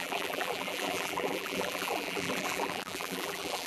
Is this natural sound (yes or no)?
no